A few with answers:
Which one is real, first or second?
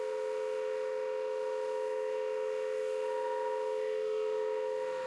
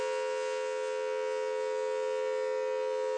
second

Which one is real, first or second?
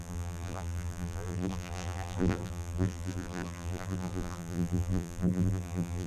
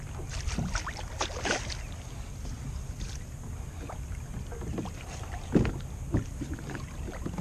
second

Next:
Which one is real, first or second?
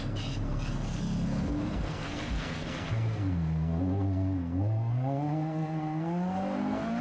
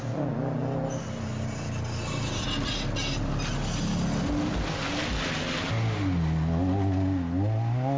second